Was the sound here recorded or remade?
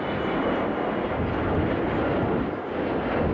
recorded